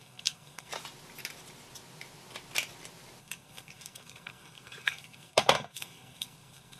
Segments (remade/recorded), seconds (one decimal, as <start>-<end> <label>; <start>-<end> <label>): 0.0-0.7 remade; 0.7-3.2 recorded; 3.2-6.8 remade